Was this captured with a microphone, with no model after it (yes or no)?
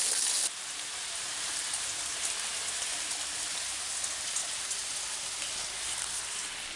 yes